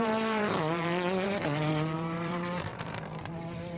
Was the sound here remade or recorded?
remade